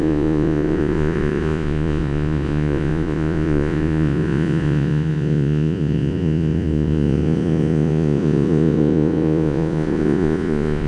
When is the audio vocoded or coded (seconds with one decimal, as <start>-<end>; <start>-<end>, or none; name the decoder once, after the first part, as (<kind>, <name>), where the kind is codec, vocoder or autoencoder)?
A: 0.0-10.9 (vocoder, Vocos)